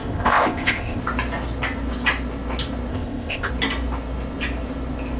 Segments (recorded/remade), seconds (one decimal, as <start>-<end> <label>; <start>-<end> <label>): 0.0-1.0 remade; 1.0-2.9 recorded; 2.9-3.5 remade; 3.5-5.2 recorded